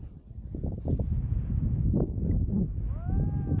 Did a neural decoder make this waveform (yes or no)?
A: no